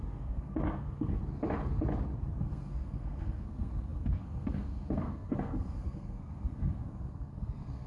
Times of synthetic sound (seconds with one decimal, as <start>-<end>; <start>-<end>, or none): 0.0-1.2; 2.4-7.9